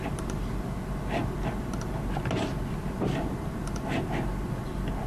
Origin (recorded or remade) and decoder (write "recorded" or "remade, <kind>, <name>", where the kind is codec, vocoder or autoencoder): recorded